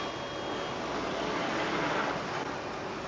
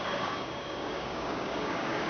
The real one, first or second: first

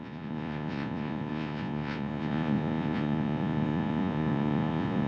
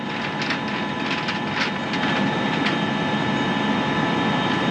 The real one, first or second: second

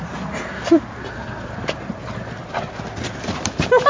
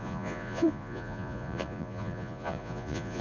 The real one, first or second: first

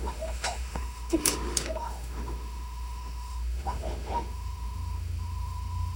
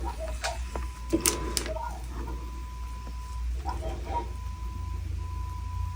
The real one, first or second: second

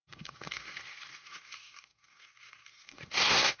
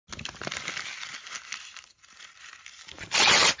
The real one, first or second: second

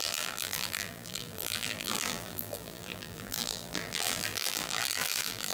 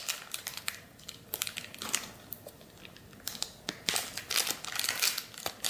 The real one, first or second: second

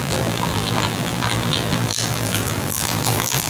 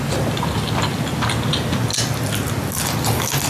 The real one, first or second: second